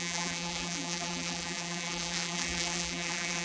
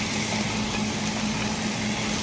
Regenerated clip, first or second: first